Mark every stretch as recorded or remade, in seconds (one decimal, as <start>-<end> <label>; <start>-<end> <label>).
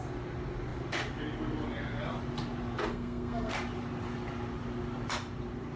0.0-2.9 recorded; 2.9-3.5 remade; 3.5-5.8 recorded